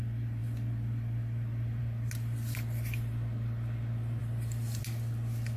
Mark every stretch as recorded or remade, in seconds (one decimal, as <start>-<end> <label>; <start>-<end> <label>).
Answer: 0.0-4.2 recorded; 4.2-4.8 remade; 4.8-5.6 recorded